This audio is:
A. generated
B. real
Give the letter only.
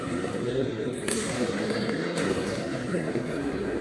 A